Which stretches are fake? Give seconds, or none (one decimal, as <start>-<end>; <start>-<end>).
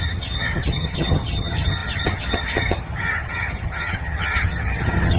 0.0-5.2